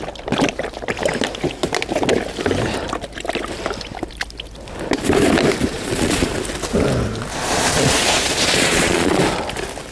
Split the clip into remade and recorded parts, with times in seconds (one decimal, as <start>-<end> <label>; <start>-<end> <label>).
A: 0.0-5.7 recorded; 5.7-6.3 remade; 6.3-7.4 recorded; 7.4-9.2 remade; 9.2-9.9 recorded